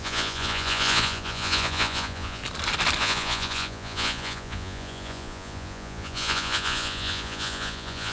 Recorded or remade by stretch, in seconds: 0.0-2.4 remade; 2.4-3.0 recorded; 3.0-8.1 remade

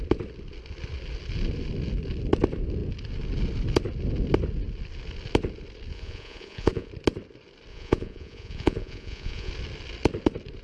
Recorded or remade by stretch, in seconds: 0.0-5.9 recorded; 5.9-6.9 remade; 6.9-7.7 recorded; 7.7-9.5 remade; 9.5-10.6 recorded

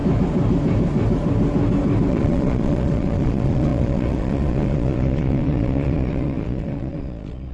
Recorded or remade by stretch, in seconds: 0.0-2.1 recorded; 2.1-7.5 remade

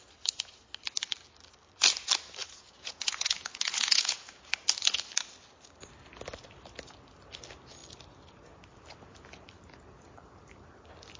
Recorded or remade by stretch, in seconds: 0.0-2.4 recorded; 2.4-4.5 remade; 4.5-11.2 recorded